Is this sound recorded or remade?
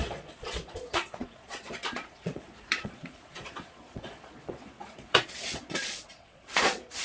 remade